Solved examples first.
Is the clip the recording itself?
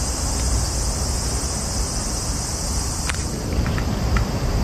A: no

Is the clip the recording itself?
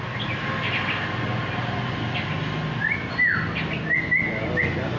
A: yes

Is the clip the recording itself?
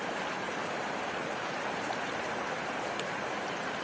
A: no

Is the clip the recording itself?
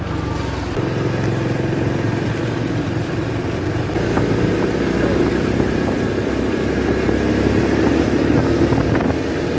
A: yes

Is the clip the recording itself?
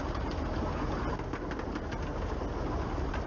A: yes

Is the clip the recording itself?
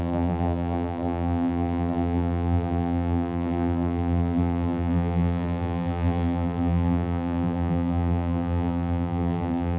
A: no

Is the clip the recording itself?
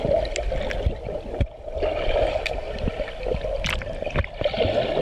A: yes